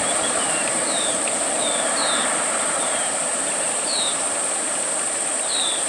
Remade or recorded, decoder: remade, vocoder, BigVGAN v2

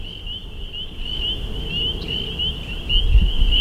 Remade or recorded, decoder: recorded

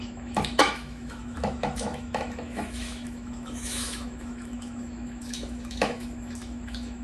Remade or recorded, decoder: remade, autoencoder, DAC-VAE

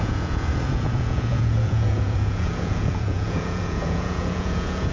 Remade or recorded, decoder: remade, vocoder, Vocos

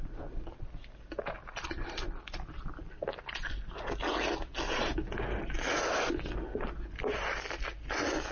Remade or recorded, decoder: recorded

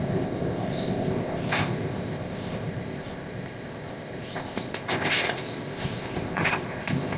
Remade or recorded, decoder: remade, codec, ZipCodec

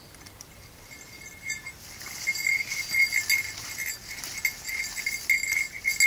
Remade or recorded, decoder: recorded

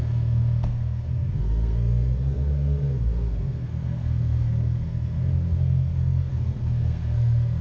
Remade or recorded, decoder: remade, codec, SNAC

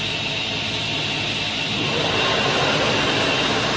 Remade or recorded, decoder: recorded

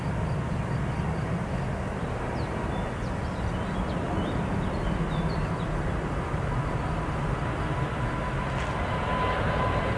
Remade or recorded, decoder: recorded